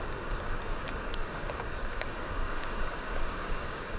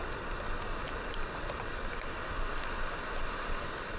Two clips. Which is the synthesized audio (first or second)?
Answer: first